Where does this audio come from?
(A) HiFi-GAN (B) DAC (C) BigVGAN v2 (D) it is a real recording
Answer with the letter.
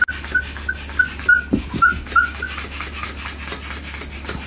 D